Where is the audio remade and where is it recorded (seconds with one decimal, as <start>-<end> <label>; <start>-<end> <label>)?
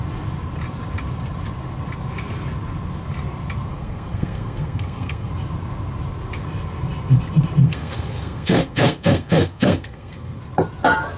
0.0-3.7 recorded; 3.7-5.3 remade; 5.3-7.6 recorded; 7.6-10.4 remade; 10.4-11.2 recorded